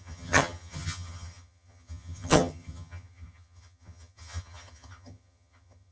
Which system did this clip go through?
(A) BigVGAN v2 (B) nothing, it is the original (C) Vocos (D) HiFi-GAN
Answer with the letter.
D